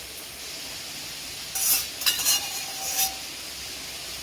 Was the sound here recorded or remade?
recorded